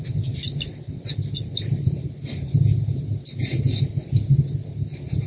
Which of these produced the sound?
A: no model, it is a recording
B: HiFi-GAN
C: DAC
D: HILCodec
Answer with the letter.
A